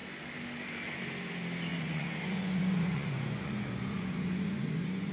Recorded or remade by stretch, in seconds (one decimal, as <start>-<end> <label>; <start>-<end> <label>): 0.0-1.7 recorded; 1.7-5.1 remade